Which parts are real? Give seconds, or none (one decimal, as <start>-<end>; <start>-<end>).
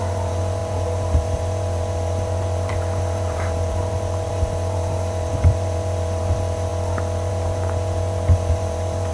6.7-7.3